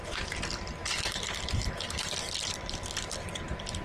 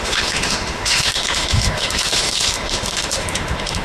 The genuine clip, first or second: first